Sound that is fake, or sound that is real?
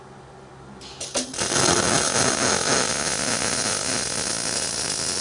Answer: real